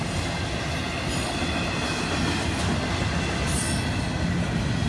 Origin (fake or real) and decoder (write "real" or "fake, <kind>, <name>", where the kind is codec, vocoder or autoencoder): real